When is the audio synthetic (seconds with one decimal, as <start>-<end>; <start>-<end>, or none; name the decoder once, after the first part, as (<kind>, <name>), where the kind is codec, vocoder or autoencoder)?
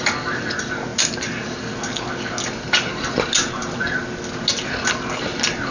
none